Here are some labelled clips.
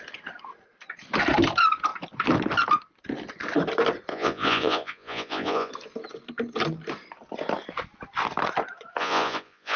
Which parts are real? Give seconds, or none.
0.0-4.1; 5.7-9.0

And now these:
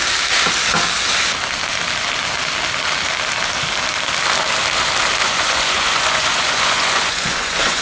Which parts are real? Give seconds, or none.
0.0-5.2

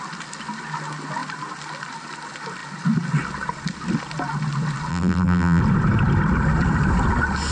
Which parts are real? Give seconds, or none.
0.0-4.9; 5.6-7.5

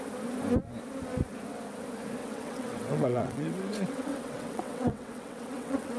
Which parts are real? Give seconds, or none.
0.0-2.2

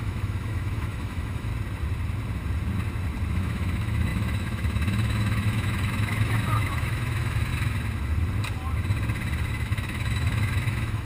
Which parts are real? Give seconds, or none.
1.5-3.3; 7.5-9.5

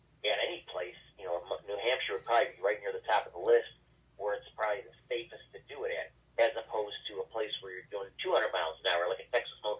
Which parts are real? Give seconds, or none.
0.0-9.8

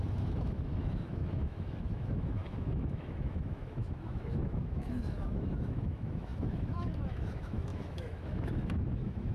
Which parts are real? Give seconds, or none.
none